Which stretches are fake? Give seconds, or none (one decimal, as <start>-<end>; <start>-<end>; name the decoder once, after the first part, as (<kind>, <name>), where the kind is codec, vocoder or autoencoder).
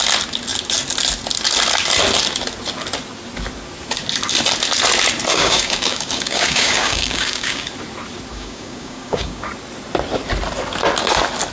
5.3-7.7 (codec, DAC); 8.3-9.5